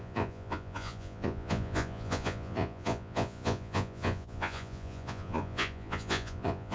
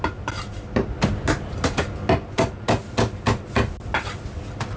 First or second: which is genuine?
second